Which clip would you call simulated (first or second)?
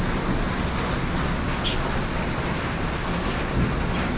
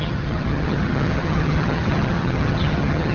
second